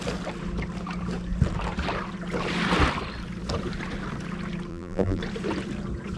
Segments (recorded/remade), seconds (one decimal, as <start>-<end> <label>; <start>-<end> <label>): 0.0-4.7 recorded; 4.7-5.2 remade; 5.2-6.2 recorded